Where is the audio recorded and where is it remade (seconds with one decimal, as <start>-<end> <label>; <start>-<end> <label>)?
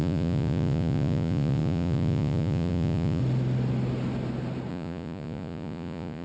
0.0-3.2 remade; 3.2-4.7 recorded; 4.7-6.2 remade